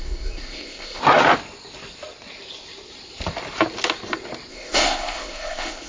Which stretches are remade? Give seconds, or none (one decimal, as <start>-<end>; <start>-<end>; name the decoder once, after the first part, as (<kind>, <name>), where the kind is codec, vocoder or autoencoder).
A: 0.0-1.0 (codec, ZipCodec); 4.5-5.9